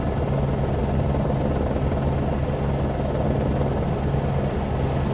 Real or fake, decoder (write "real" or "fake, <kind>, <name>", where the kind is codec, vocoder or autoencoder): real